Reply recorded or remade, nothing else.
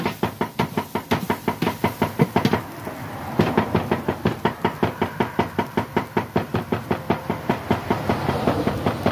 remade